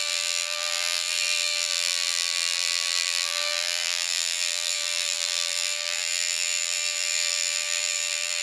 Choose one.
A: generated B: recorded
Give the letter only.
A